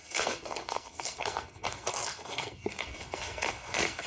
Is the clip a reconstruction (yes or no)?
yes